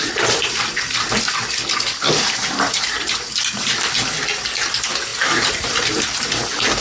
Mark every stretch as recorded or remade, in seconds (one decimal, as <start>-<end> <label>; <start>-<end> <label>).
0.0-5.1 recorded; 5.1-6.0 remade; 6.0-6.8 recorded